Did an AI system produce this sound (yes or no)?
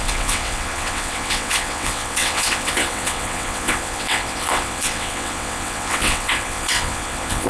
yes